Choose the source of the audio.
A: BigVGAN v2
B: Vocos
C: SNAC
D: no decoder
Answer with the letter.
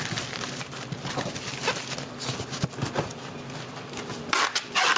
D